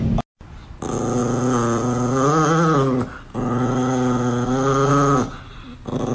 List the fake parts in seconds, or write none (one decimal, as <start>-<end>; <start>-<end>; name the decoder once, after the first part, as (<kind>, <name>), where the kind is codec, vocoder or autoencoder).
none